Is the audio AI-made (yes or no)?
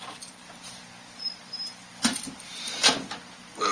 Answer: no